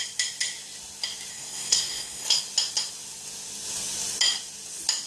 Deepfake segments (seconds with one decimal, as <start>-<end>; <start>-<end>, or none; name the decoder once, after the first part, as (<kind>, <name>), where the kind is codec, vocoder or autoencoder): 1.3-2.4 (codec, SNAC)

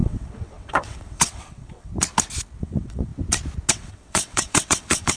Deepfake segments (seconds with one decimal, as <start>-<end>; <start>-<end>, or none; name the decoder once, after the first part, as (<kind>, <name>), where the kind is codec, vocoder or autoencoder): 0.0-1.9 (vocoder, WaveNeXt); 2.6-3.1; 3.7-5.2